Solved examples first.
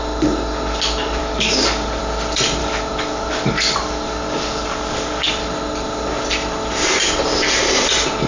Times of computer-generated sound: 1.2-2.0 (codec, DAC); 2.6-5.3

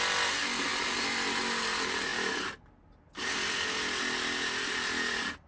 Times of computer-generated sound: none

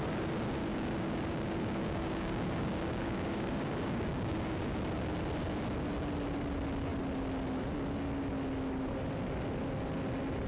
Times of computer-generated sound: 0.6-4.6 (codec, DAC)

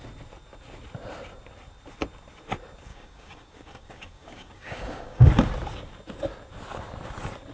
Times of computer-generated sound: 2.9-5.3 (codec, DAC)

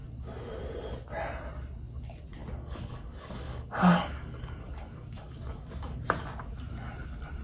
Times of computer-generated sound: 2.4-6.0 (codec, DAC)

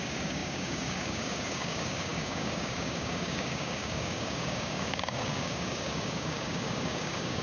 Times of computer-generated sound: 0.0-7.4 (codec, DAC)

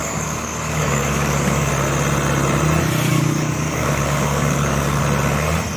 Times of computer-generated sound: 0.0-1.7 (codec, DAC); 3.1-5.0

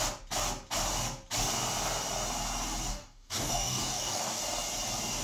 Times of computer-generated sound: 2.9-4.4 (codec, DAC)